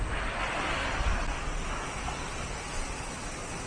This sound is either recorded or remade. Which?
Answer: recorded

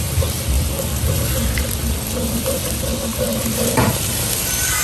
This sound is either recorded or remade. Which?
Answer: remade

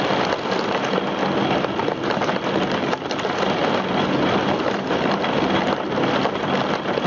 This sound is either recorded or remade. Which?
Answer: recorded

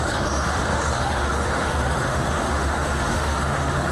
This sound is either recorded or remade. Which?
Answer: remade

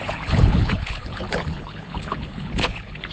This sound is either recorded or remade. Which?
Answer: remade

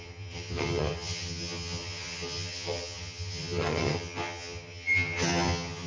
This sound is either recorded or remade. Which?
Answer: remade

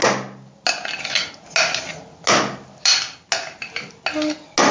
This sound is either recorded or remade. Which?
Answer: recorded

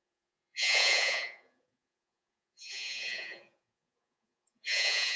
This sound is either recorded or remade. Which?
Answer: remade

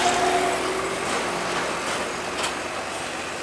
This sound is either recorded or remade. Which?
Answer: recorded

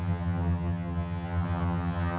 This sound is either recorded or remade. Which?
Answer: remade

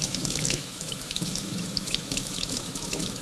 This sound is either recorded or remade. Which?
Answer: remade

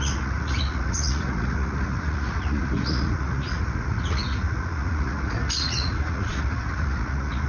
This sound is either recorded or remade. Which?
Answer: remade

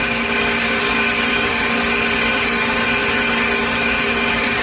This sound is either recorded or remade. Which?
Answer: recorded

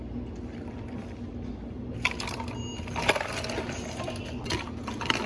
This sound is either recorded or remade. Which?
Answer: recorded